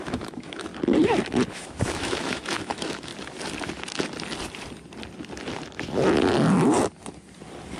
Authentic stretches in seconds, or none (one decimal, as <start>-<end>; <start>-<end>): 0.7-1.5; 3.1-7.8